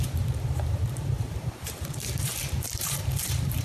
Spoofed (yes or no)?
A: yes